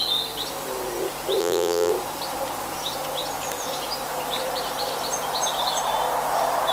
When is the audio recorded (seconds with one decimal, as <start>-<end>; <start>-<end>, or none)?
0.0-1.4; 1.9-6.7

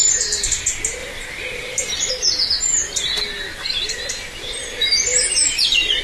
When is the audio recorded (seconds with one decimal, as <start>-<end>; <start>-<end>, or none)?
0.0-1.0; 2.1-5.1

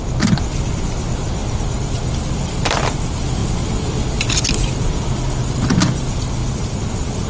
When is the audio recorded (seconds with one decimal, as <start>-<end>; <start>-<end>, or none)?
0.0-1.4; 2.4-7.3

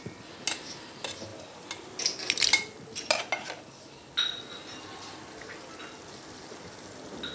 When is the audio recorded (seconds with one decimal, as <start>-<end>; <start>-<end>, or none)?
0.0-7.3

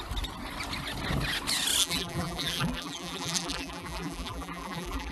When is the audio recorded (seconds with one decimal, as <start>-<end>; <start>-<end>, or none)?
0.0-1.8

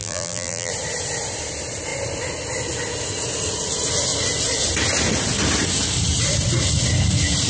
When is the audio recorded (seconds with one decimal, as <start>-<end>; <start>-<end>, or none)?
0.7-7.5